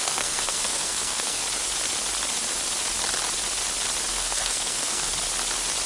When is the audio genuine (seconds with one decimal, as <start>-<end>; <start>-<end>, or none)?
1.4-4.1; 5.1-5.9